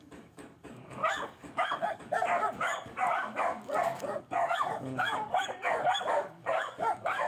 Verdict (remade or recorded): remade